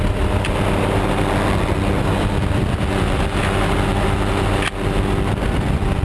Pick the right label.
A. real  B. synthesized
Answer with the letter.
A